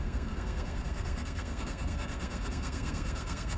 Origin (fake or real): fake